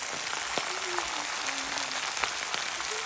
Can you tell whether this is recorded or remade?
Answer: recorded